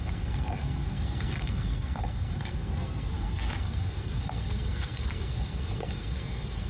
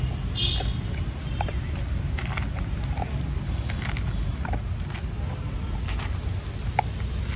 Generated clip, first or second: first